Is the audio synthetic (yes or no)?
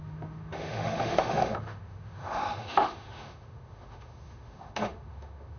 yes